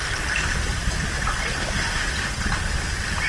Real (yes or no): yes